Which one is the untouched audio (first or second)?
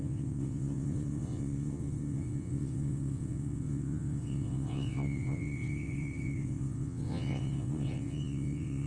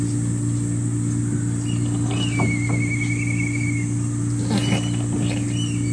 second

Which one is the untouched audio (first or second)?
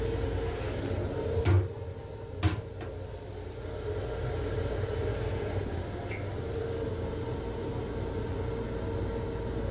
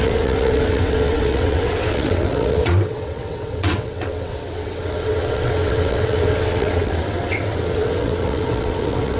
first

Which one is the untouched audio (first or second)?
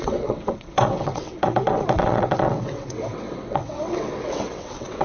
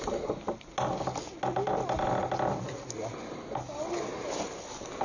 second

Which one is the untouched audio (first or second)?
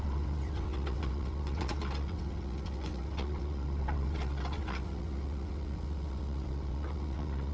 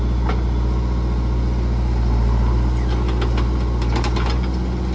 second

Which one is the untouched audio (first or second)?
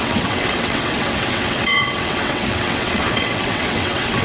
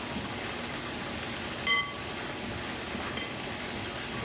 second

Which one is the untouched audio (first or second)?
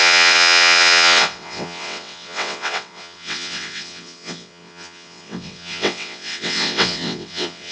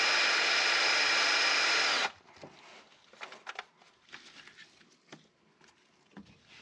second